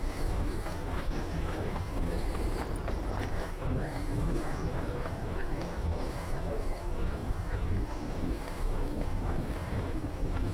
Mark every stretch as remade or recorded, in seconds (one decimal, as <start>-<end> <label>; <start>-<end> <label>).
0.0-2.3 remade; 2.3-3.3 recorded; 3.3-10.5 remade